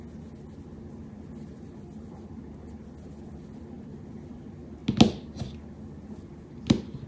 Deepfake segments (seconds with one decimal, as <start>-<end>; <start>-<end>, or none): none